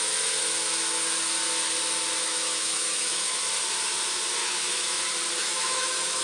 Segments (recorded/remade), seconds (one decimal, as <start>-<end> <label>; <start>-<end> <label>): 0.0-2.2 recorded; 2.2-3.4 remade; 3.4-4.4 recorded; 4.4-5.0 remade; 5.0-5.4 recorded; 5.4-6.2 remade